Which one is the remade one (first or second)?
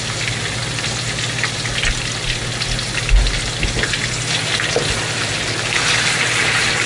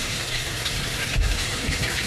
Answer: second